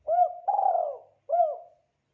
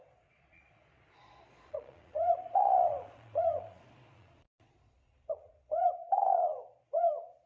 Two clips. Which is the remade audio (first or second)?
second